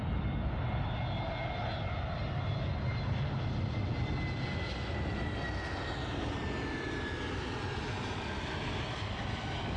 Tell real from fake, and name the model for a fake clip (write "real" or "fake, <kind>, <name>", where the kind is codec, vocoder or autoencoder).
real